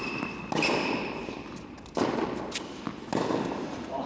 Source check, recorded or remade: recorded